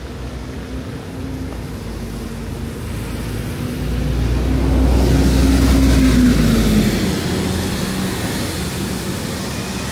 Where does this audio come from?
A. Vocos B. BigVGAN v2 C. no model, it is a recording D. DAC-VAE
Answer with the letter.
C